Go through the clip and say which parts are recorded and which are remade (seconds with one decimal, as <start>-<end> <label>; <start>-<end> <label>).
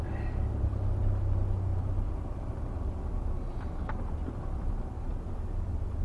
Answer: 0.0-1.7 recorded; 1.7-2.6 remade; 2.6-6.0 recorded